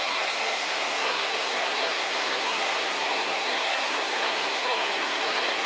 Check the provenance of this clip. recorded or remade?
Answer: remade